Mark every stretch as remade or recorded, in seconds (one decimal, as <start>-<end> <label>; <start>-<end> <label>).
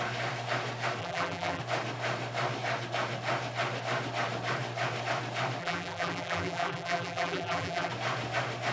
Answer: 0.0-1.0 recorded; 1.0-1.6 remade; 1.6-5.6 recorded; 5.6-7.9 remade; 7.9-8.7 recorded